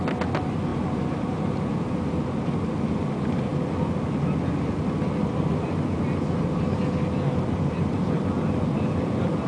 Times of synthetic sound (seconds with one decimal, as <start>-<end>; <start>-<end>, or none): 0.7-1.4